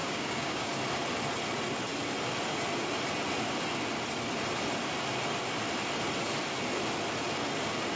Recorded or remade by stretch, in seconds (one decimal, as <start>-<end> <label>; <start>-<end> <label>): 0.0-0.7 remade; 0.7-8.0 recorded